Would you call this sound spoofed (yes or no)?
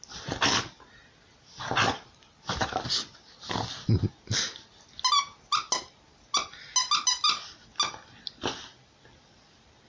no